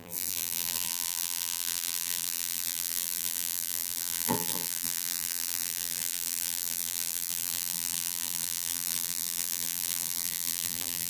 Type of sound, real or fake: fake